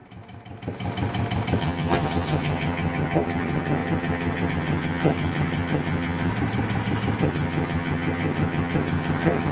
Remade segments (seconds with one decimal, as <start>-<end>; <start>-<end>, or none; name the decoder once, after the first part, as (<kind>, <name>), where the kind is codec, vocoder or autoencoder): 1.6-6.3 (vocoder, HiFi-GAN); 7.2-9.5